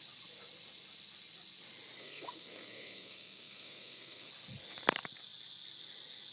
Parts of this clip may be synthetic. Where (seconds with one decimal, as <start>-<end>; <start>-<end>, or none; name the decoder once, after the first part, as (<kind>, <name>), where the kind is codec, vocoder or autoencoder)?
2.0-4.3 (codec, SNAC)